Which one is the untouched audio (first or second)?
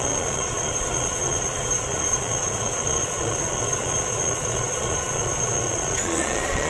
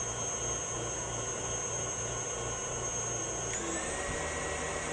second